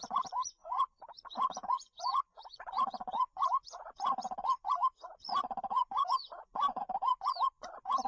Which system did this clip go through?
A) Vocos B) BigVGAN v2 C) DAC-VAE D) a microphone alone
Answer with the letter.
A